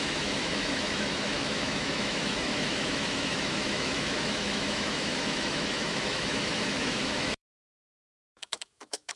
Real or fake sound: fake